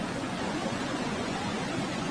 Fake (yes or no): yes